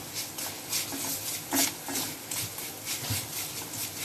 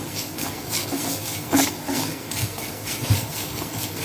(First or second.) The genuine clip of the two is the first